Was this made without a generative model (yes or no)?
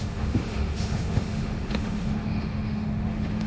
no